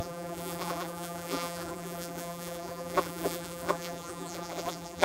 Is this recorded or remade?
remade